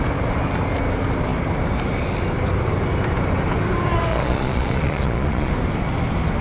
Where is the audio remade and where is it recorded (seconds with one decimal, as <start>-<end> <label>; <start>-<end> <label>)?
0.0-4.1 recorded; 4.1-5.5 remade; 5.5-6.4 recorded